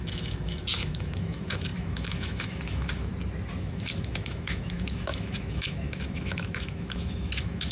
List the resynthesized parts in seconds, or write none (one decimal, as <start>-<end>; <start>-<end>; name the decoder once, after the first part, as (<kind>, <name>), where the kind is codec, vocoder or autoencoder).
0.0-3.1 (autoencoder, DAC-VAE); 3.6-7.7